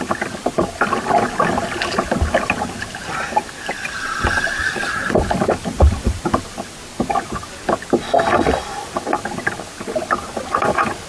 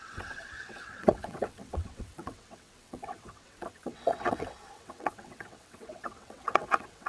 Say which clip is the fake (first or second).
second